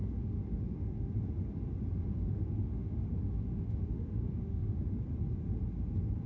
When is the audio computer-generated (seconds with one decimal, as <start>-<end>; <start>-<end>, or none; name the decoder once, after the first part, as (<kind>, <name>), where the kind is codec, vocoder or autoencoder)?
0.0-1.1 (autoencoder, DAC-VAE); 2.1-5.0